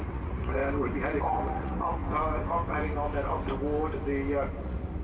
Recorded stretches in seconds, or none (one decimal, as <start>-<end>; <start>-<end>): 0.6-1.2; 2.0-4.6